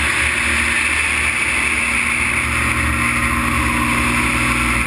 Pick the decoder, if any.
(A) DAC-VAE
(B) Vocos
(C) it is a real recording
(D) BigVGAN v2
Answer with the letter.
C